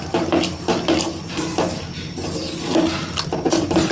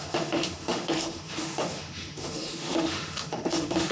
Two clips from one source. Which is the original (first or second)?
first